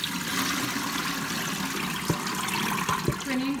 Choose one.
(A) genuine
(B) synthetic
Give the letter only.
A